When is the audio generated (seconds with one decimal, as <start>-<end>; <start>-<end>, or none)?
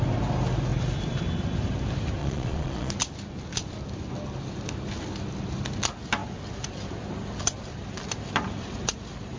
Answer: 2.2-2.9